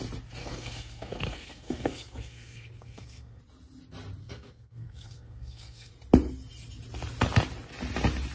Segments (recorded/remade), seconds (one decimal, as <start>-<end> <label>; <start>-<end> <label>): 0.0-0.4 recorded; 0.4-3.4 remade; 3.4-4.2 recorded; 4.2-5.9 remade; 5.9-8.3 recorded